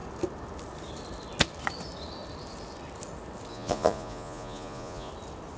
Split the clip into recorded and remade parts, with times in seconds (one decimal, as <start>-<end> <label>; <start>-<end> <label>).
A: 0.0-3.5 recorded; 3.5-5.1 remade; 5.1-5.6 recorded